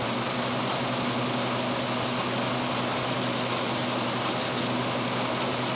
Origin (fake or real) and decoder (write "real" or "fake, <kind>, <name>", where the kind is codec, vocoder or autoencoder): real